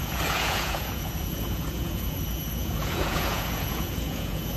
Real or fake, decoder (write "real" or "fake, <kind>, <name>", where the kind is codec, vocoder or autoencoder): fake, vocoder, Vocos